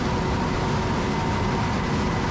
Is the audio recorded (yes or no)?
yes